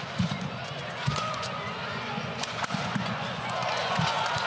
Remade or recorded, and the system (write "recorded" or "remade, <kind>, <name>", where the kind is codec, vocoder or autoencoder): remade, vocoder, Vocos